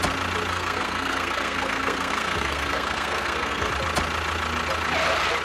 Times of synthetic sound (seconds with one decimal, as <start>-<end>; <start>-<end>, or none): 0.5-3.7